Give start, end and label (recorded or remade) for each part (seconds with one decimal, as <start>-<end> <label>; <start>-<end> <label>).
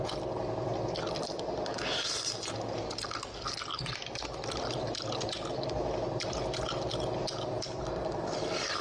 0.0-8.8 recorded